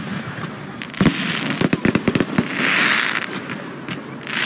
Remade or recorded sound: recorded